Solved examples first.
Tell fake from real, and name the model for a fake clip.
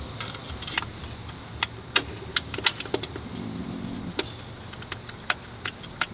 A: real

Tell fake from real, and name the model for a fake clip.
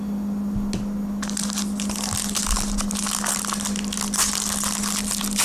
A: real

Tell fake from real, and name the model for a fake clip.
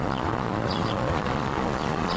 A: fake, vocoder, Vocos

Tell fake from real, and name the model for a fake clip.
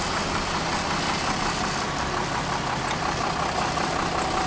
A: real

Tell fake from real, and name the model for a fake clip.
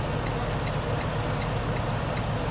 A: real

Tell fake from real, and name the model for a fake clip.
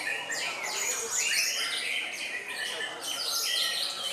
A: fake, vocoder, BigVGAN v2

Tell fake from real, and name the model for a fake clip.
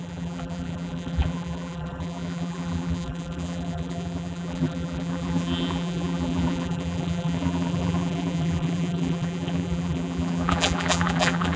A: fake, vocoder, BigVGAN v2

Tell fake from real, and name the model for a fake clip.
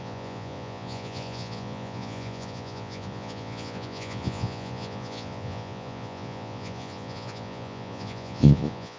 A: fake, vocoder, Vocos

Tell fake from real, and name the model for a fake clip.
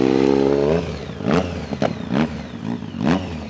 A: real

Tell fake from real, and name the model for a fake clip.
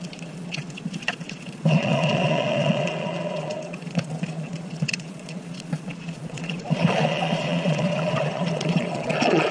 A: fake, vocoder, Vocos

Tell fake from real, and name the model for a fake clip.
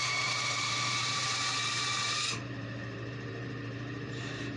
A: fake, vocoder, BigVGAN v2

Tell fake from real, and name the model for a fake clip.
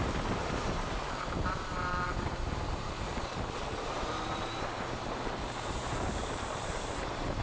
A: fake, vocoder, BigVGAN v2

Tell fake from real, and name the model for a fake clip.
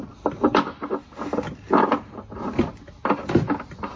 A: real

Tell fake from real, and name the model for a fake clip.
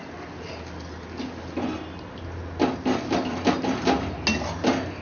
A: real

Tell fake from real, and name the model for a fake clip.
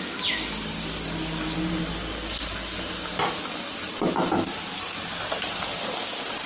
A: real